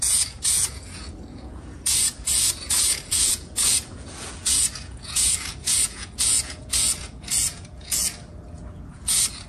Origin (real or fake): fake